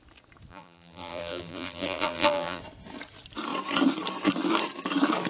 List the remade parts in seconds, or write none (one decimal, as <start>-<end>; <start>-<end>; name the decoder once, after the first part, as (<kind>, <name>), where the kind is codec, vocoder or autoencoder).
0.5-2.6 (vocoder, BigVGAN v2)